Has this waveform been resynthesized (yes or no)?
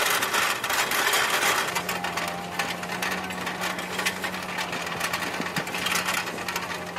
no